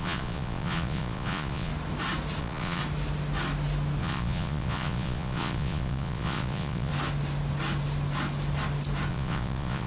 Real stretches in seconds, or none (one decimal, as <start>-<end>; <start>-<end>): 1.7-2.4; 2.8-4.0; 6.9-9.1